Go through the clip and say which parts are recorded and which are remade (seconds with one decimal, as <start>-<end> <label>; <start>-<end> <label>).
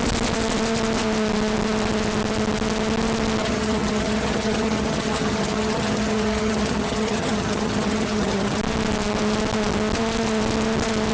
0.0-3.4 recorded; 3.4-8.6 remade; 8.6-11.1 recorded